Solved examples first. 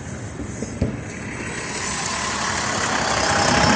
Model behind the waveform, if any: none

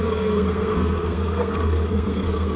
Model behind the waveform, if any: codec, SNAC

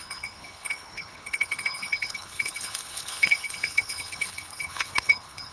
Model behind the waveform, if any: codec, HILCodec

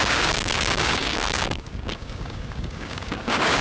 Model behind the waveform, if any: codec, DAC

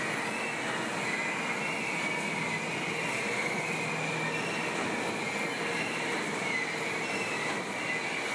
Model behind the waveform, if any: none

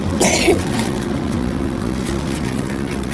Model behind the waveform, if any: vocoder, WaveNeXt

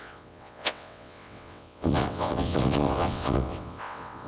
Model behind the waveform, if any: vocoder, WaveNeXt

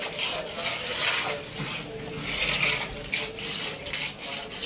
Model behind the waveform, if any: none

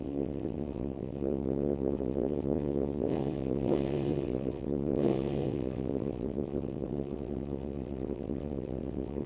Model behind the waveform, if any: vocoder, WaveNeXt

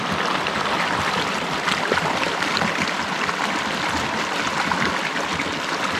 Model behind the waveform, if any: none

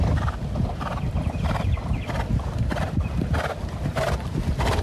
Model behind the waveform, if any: none